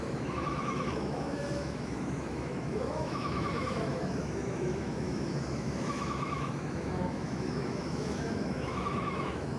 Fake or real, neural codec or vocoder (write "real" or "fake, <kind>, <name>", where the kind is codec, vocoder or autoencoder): fake, autoencoder, DAC-VAE